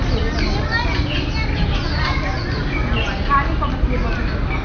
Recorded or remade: recorded